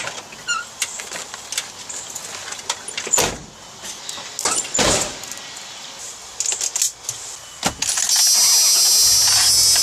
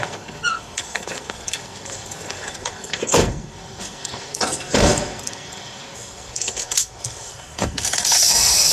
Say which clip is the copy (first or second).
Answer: second